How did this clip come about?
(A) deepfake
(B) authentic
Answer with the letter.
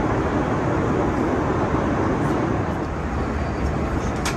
B